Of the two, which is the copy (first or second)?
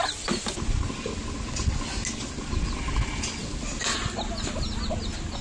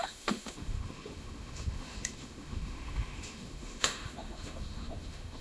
second